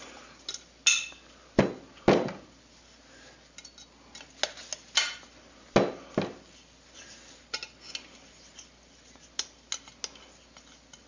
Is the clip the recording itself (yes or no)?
yes